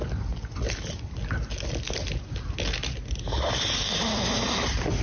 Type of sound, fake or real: real